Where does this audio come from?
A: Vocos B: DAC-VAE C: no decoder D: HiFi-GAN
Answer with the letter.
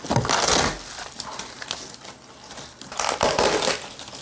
C